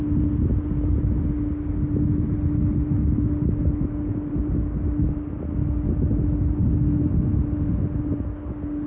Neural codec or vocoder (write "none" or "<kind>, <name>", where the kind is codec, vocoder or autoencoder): none